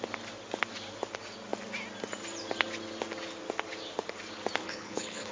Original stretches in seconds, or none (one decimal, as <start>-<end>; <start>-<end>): 0.0-4.6